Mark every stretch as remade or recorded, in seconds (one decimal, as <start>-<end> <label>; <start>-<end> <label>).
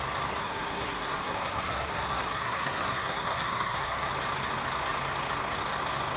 0.0-0.4 recorded; 0.4-4.1 remade; 4.1-6.2 recorded